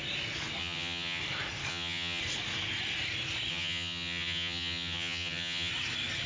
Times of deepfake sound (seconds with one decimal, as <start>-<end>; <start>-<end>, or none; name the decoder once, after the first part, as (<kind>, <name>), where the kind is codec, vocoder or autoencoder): 0.6-1.2 (vocoder, HiFi-GAN); 1.7-2.2; 3.5-5.7

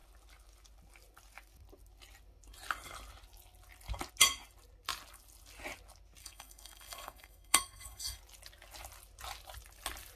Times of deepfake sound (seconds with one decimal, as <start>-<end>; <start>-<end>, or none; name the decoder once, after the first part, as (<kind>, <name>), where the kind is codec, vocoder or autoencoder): 6.2-8.2 (codec, SNAC)